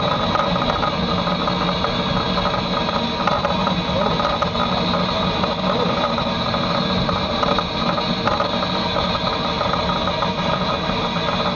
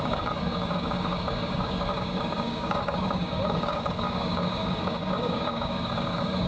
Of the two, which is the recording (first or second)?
first